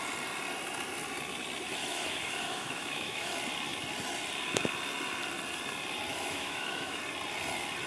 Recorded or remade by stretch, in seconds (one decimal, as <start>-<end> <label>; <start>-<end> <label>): 0.0-1.8 recorded; 1.8-3.3 remade; 3.3-6.1 recorded; 6.1-7.0 remade; 7.0-7.9 recorded